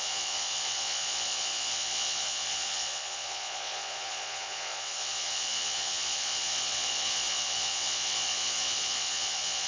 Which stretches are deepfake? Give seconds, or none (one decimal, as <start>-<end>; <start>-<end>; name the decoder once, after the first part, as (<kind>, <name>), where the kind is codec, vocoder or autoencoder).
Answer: 0.0-9.7 (vocoder, Vocos)